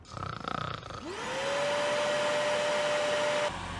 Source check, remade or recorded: recorded